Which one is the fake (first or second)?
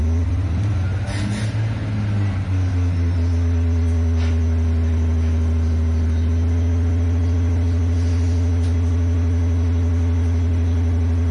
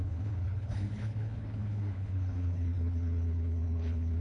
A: second